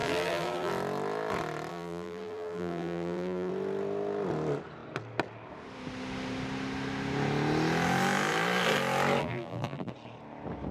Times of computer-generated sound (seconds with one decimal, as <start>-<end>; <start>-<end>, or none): 0.0-0.7; 1.7-3.5; 9.2-9.9